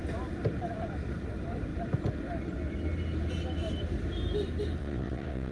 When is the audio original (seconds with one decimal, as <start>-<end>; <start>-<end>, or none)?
0.0-4.8